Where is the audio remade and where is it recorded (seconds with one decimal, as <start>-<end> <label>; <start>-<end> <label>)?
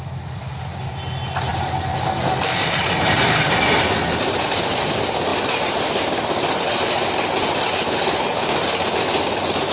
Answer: 0.0-1.5 recorded; 1.5-3.2 remade; 3.2-9.7 recorded